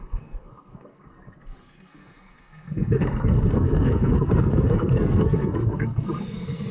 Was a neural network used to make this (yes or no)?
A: yes